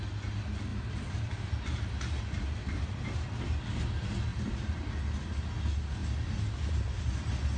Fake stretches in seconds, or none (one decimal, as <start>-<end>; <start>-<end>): 0.7-2.2; 4.3-4.9